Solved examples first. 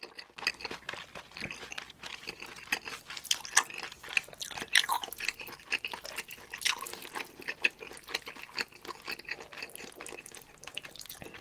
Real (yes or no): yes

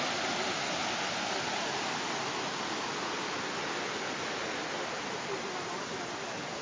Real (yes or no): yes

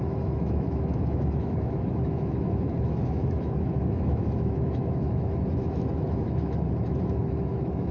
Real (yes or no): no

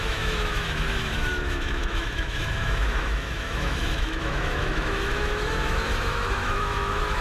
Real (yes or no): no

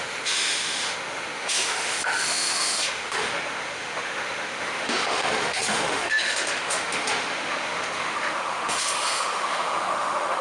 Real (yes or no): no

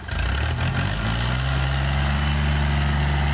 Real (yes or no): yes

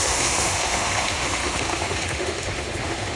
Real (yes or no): no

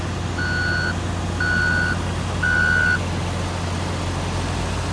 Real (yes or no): yes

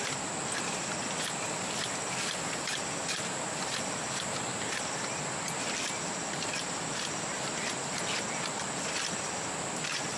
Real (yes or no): yes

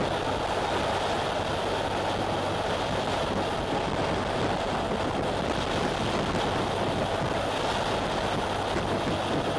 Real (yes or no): yes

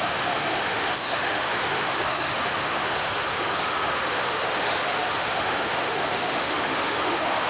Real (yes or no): no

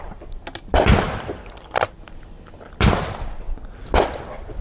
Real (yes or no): yes